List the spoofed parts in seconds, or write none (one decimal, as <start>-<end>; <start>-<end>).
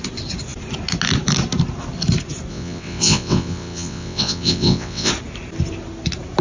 2.5-5.1